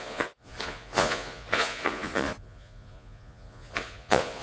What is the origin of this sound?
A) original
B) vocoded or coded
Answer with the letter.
B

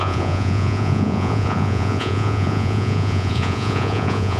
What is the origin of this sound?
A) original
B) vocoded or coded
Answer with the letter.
B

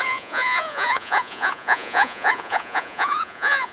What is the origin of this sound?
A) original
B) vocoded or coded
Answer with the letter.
B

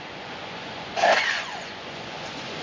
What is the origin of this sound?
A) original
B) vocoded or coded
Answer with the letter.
B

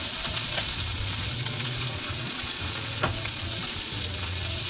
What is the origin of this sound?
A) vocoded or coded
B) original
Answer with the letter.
A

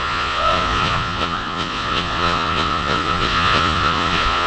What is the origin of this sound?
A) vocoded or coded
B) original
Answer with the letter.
A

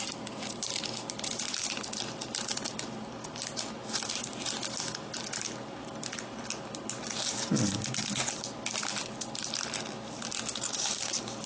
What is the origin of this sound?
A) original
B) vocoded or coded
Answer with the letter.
A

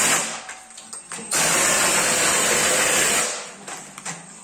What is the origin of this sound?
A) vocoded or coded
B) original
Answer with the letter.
B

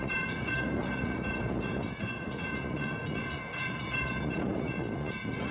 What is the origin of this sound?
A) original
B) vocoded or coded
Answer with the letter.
B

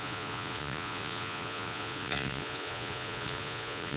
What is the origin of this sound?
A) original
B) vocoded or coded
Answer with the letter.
B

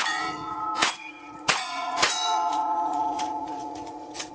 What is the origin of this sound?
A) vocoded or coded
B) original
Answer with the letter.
A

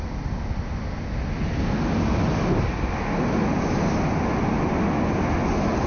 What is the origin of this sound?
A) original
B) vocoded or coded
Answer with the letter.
A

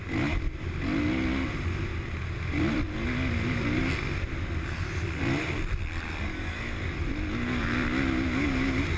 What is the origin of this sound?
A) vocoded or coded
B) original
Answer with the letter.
B